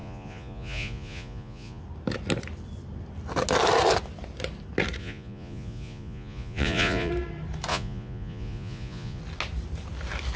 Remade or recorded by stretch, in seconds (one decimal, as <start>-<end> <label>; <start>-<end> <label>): 0.0-1.8 remade; 1.8-5.0 recorded; 5.0-7.1 remade; 7.1-7.7 recorded; 7.7-9.2 remade; 9.2-10.4 recorded